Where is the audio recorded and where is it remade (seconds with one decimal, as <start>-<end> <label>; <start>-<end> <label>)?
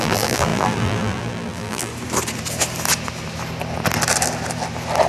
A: 0.0-1.9 remade; 1.9-5.1 recorded